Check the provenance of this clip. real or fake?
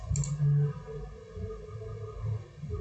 real